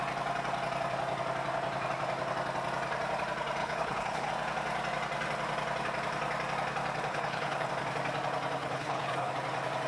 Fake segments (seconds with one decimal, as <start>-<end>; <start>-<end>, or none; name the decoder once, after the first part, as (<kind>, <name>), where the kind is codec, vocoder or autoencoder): 3.6-4.3 (codec, HILCodec); 7.1-7.7; 8.6-9.3